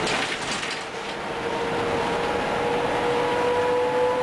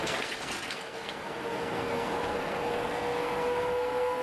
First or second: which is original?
first